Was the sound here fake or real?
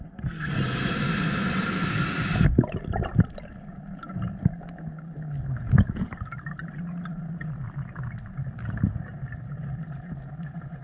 real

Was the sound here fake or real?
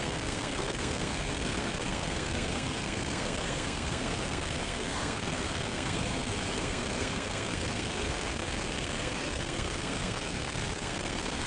fake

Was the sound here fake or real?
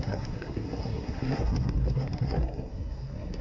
fake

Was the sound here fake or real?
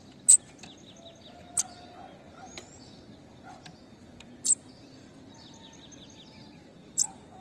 real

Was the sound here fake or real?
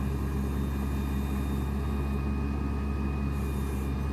real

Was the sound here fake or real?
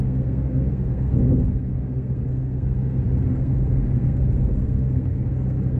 fake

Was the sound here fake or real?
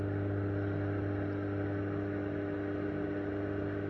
real